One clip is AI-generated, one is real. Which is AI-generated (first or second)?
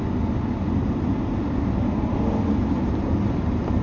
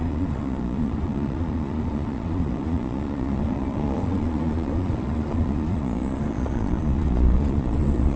second